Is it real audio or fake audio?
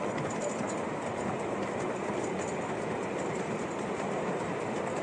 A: real